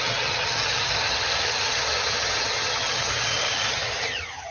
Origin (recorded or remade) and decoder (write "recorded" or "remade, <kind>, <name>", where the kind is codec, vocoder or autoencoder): remade, vocoder, HiFi-GAN